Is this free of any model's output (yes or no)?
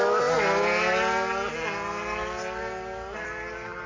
yes